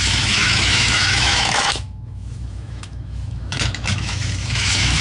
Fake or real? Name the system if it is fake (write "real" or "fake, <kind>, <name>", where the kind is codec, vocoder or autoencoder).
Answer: fake, autoencoder, DAC-VAE